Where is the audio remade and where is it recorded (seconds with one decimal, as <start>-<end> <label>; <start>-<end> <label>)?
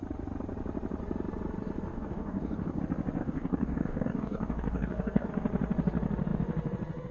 0.0-1.9 recorded; 1.9-2.8 remade; 2.8-3.2 recorded; 3.2-5.3 remade; 5.3-7.1 recorded